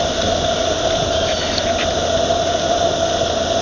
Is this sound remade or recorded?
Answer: recorded